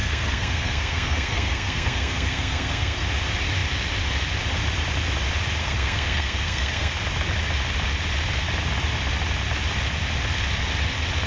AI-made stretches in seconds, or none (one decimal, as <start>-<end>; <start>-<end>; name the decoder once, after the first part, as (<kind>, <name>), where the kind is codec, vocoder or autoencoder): 0.0-3.0 (codec, SNAC); 5.6-6.9